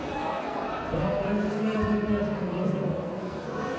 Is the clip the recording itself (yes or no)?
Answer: no